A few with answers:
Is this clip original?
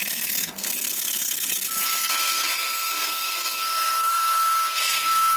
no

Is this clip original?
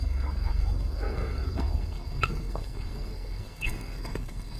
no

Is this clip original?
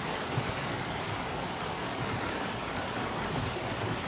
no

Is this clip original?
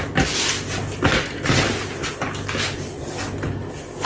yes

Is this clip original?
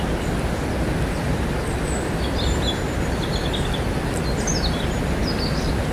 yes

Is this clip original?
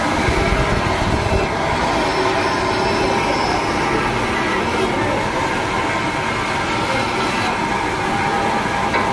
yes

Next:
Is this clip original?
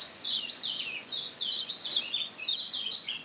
no